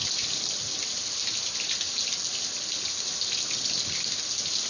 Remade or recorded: recorded